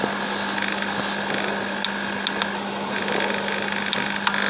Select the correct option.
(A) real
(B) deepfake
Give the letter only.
A